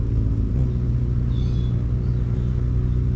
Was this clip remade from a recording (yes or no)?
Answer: no